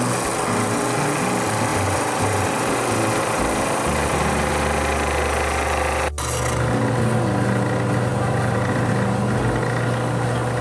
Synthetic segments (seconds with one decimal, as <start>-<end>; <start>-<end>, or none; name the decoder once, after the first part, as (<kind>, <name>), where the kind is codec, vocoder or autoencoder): 1.7-4.5 (vocoder, BigVGAN v2); 8.1-8.9